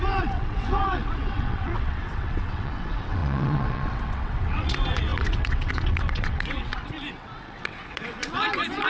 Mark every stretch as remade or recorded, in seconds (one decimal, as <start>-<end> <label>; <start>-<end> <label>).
0.0-8.9 remade